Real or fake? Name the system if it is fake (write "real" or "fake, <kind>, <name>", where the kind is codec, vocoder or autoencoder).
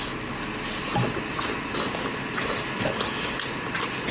real